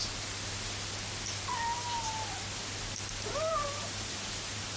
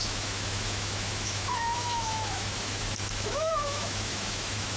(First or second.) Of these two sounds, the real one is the first